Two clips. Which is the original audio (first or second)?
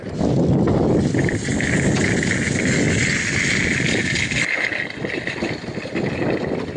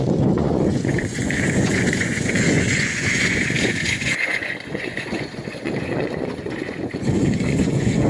first